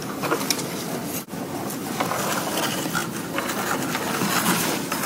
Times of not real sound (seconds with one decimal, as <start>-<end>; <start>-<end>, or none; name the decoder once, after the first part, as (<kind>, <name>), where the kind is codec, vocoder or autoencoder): 0.0-0.5 (codec, DAC)

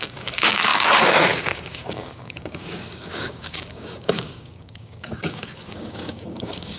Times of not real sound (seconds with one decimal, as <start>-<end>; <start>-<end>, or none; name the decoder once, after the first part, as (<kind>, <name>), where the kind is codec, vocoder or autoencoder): 0.0-6.8 (codec, DAC)

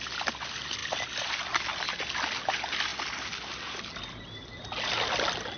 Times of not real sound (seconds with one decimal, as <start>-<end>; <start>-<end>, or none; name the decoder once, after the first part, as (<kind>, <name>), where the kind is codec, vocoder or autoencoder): none

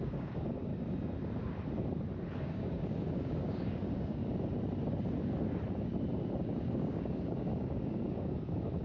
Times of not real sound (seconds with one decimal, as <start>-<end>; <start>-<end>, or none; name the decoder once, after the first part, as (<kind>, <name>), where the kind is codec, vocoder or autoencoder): 0.0-0.7 (codec, DAC); 2.4-4.2; 6.4-8.8

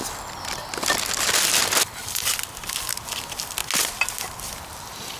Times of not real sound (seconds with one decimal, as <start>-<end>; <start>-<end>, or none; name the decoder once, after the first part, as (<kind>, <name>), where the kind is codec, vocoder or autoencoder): none

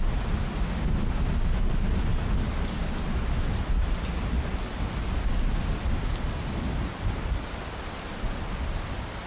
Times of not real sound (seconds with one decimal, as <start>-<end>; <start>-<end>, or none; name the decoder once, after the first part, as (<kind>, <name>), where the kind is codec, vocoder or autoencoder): none

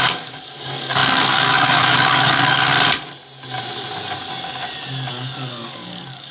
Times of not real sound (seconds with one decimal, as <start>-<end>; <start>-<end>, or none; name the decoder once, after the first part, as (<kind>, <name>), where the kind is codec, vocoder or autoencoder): 0.0-2.7 (codec, DAC); 5.1-6.3